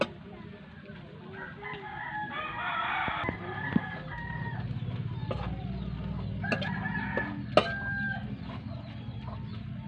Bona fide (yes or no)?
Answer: yes